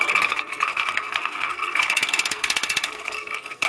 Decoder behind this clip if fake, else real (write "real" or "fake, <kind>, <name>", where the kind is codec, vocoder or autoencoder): fake, codec, SNAC